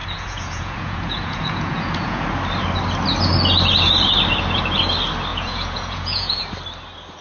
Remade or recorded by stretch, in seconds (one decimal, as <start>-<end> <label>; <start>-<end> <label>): 0.0-2.2 remade; 2.2-5.3 recorded; 5.3-6.4 remade; 6.4-7.2 recorded